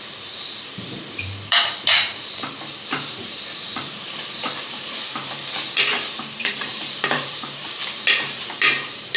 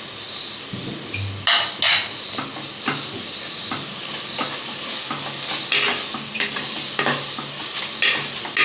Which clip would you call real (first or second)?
second